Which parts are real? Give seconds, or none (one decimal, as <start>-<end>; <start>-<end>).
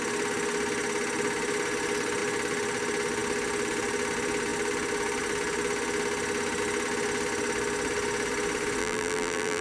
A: 0.0-8.8